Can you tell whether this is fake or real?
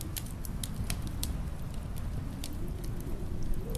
real